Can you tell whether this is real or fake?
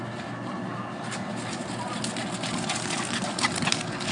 real